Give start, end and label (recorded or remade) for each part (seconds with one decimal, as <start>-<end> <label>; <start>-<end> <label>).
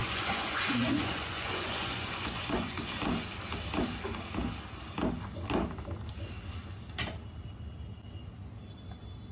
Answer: 0.0-2.8 remade; 2.8-9.3 recorded